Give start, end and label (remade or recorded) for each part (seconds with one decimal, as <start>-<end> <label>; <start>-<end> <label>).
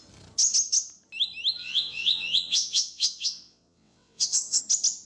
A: 0.0-1.6 recorded; 1.6-4.6 remade; 4.6-5.0 recorded